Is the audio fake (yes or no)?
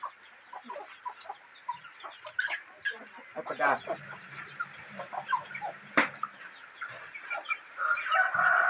no